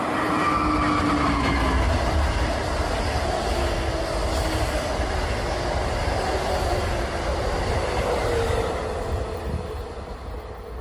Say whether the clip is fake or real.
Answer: real